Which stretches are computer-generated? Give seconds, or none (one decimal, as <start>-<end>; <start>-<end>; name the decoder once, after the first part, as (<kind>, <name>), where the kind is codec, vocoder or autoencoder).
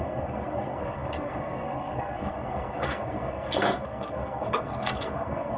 0.0-5.6 (codec, SNAC)